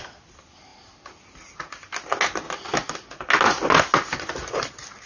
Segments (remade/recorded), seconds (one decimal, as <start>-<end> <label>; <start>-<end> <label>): 0.0-5.1 recorded